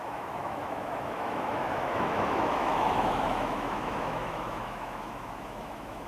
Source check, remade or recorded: remade